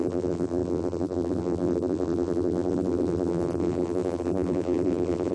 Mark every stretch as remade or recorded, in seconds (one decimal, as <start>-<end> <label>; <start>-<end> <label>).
0.0-5.3 remade